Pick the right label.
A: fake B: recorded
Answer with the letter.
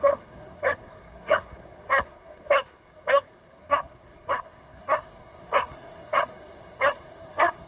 A